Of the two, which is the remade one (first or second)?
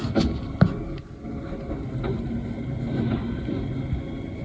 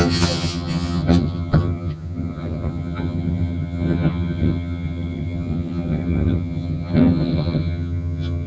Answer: second